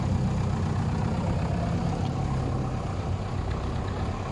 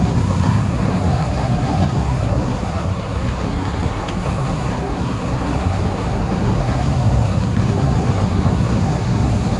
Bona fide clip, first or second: first